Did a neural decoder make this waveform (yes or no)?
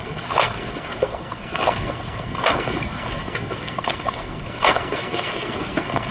yes